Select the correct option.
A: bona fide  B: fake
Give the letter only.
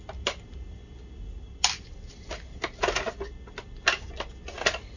A